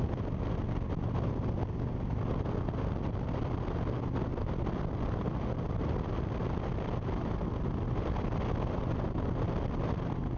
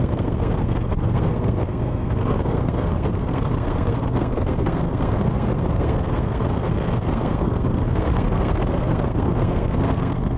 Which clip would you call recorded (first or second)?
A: first